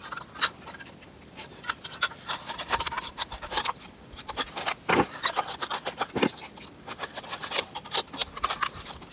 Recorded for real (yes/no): no